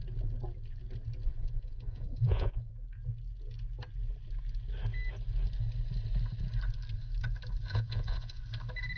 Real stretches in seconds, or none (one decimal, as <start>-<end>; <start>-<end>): 0.0-1.3; 2.7-7.7; 8.4-9.0

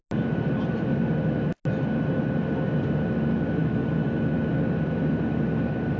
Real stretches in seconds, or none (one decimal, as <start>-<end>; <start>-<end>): 0.0-3.6; 4.5-6.0

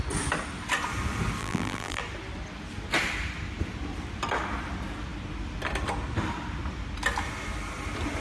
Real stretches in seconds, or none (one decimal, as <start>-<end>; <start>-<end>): 0.0-1.4; 2.0-8.2

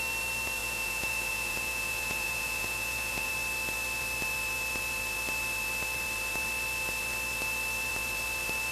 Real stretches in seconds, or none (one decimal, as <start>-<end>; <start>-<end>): 0.0-0.6; 3.3-8.7